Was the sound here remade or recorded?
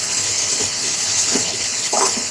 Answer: remade